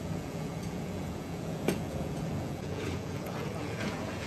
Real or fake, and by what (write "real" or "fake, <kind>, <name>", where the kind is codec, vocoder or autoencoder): fake, vocoder, Vocos